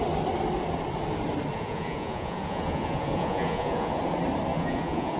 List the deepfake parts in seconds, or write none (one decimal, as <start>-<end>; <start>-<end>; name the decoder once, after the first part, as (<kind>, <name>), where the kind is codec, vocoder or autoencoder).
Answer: 1.5-4.0 (vocoder, Vocos); 4.5-5.2